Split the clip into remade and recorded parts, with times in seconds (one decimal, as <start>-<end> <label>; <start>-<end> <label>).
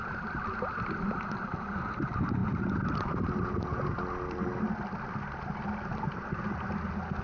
0.0-7.2 recorded